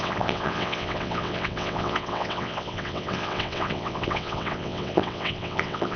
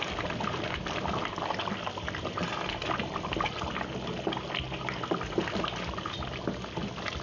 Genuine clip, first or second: second